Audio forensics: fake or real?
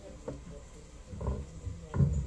real